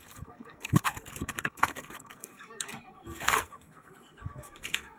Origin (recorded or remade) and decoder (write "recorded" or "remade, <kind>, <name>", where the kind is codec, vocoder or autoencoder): remade, codec, SNAC